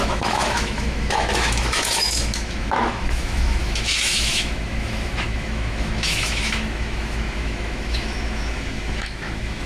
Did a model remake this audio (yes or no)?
yes